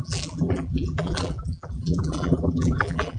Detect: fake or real fake